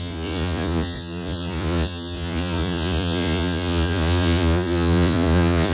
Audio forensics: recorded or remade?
remade